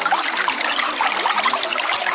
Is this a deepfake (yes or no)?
no